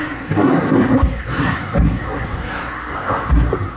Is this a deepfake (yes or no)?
yes